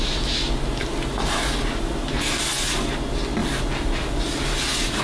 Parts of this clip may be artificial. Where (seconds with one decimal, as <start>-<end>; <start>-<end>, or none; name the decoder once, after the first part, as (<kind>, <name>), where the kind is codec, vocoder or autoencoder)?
3.4-5.0 (vocoder, BigVGAN v2)